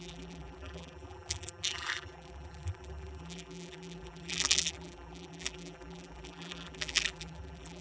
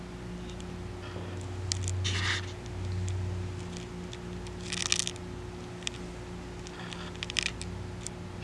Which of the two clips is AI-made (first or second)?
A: first